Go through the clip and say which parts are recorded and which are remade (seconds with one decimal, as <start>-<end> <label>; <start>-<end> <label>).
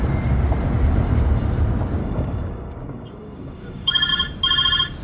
0.0-2.0 recorded; 2.0-4.1 remade; 4.1-5.0 recorded